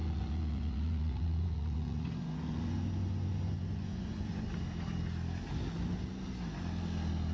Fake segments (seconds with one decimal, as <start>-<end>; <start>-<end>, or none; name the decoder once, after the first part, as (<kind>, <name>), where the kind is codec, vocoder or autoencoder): 0.0-4.4 (vocoder, Vocos)